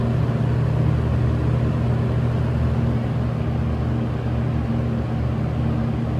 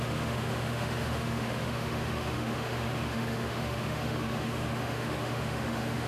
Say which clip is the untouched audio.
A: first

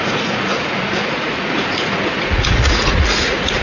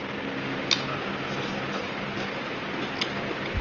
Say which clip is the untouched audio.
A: second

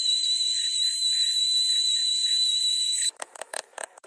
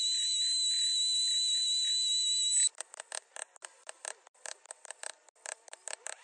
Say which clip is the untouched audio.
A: second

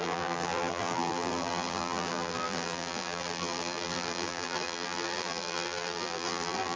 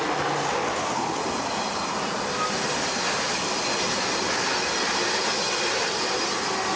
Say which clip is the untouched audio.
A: second